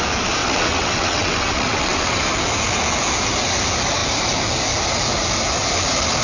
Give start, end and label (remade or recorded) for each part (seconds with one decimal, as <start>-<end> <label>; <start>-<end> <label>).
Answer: 0.0-0.4 recorded; 0.4-2.2 remade; 2.2-6.2 recorded